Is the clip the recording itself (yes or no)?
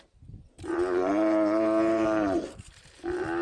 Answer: no